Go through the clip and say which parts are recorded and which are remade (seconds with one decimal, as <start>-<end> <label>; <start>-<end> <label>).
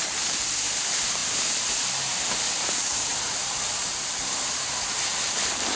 0.0-5.8 remade